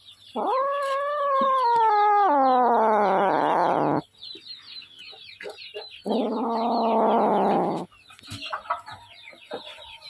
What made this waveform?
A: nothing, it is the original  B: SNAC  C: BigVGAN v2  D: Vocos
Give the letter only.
A